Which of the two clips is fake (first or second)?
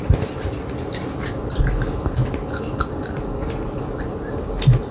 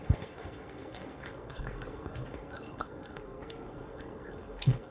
second